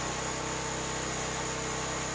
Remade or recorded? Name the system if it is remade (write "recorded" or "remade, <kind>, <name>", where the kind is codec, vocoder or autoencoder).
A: recorded